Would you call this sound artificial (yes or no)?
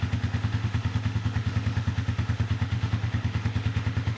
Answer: yes